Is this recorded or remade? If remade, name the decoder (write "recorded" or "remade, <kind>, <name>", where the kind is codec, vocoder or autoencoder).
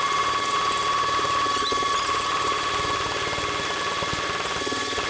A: recorded